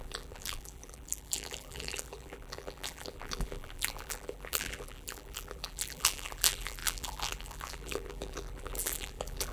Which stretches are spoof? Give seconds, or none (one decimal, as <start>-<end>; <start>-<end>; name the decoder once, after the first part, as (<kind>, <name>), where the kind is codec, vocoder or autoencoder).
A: 0.0-9.5 (vocoder, BigVGAN v2)